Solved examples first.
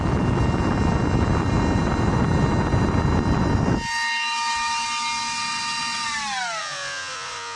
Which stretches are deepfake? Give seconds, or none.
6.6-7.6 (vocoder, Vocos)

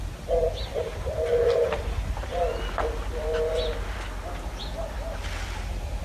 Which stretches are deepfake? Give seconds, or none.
none

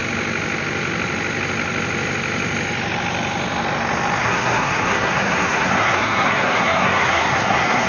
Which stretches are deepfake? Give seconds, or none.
4.2-7.9 (codec, SNAC)

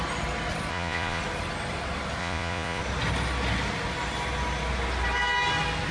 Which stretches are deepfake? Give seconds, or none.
0.7-1.2 (vocoder, Vocos); 2.2-2.8

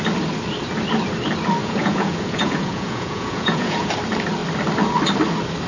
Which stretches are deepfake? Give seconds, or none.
1.6-3.9 (vocoder, Vocos)

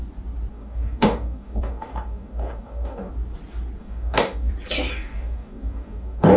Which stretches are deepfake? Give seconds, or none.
0.5-3.1 (codec, DAC); 3.8-4.5; 4.9-6.4

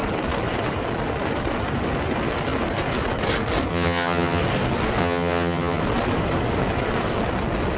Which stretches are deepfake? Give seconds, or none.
3.7-4.4 (vocoder, HiFi-GAN); 5.0-5.8

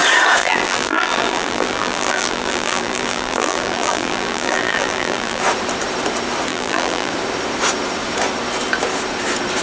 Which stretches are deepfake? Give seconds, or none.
0.4-5.4 (vocoder, BigVGAN v2); 6.5-7.1